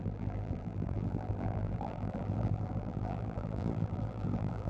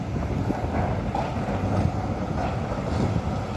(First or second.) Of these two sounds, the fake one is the first